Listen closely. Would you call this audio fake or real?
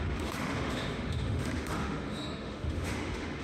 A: fake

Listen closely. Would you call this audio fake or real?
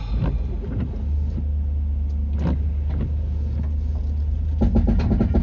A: real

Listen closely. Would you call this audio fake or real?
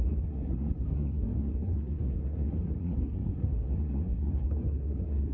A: fake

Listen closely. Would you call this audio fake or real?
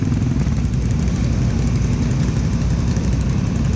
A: real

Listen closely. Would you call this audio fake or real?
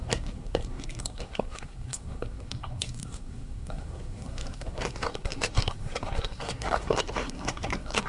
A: fake